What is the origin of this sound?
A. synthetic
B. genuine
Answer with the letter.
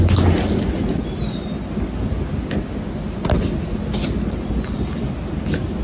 B